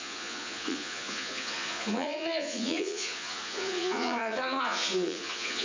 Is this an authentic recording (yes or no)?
no